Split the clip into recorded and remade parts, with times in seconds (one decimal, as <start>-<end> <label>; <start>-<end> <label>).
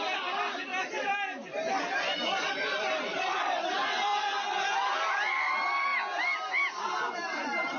0.0-0.7 remade; 0.7-2.0 recorded; 2.0-4.1 remade; 4.1-5.1 recorded; 5.1-5.9 remade; 5.9-6.8 recorded; 6.8-7.8 remade